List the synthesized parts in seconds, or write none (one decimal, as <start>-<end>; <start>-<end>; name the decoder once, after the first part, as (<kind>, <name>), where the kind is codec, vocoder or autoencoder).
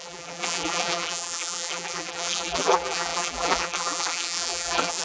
0.0-5.0 (vocoder, BigVGAN v2)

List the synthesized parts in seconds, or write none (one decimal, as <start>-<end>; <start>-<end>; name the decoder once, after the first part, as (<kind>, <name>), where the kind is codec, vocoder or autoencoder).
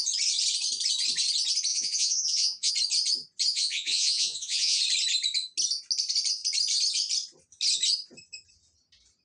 1.7-2.7 (vocoder, Vocos); 3.5-4.8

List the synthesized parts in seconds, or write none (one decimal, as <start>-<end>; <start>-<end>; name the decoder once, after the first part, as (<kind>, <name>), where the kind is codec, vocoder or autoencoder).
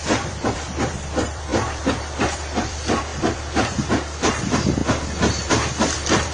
0.0-4.8 (vocoder, BigVGAN v2); 5.5-6.3